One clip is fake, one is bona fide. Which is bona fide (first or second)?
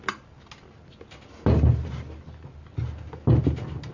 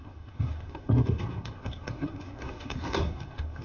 first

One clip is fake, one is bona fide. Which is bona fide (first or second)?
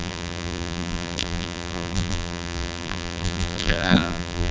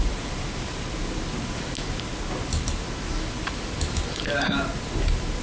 second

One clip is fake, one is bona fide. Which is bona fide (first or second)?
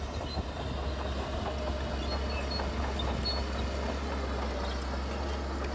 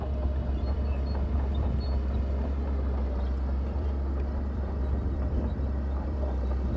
first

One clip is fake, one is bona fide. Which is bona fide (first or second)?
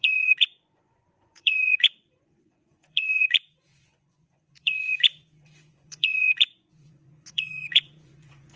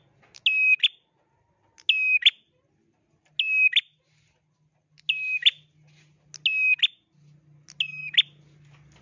second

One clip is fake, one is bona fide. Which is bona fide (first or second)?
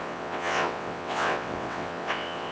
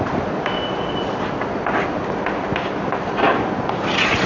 second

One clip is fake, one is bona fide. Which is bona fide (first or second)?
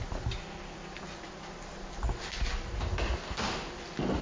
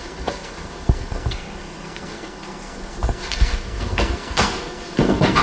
first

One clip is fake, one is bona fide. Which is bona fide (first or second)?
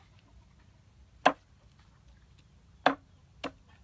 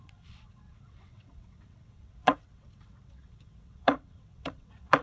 first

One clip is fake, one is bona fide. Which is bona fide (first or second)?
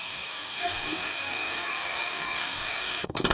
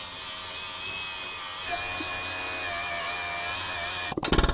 second